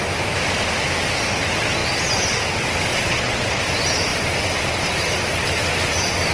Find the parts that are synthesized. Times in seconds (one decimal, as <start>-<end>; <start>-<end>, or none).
2.9-3.6